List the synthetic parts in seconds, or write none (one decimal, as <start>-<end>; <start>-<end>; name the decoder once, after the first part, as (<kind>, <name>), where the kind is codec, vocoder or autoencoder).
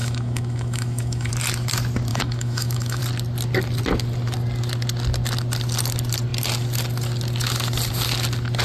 0.0-1.3 (autoencoder, DAC-VAE); 2.1-3.0